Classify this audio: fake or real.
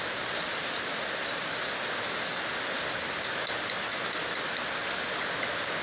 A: real